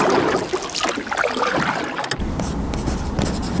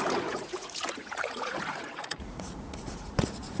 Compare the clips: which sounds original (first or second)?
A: first